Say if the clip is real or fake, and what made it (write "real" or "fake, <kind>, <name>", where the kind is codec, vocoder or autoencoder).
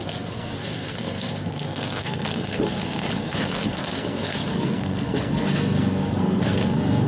fake, codec, SNAC